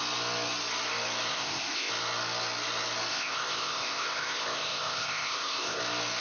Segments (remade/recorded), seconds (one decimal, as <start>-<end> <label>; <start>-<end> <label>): 0.0-1.3 recorded; 1.3-1.9 remade; 1.9-3.1 recorded; 3.1-5.8 remade; 5.8-6.2 recorded